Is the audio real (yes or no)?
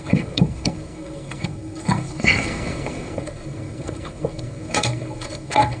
no